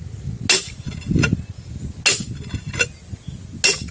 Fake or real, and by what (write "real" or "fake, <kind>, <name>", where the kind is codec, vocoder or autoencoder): real